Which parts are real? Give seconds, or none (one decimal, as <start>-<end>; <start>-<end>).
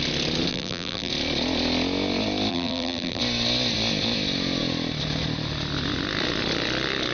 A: 0.0-0.5; 1.1-2.5; 3.2-7.1